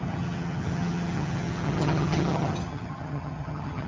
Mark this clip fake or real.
fake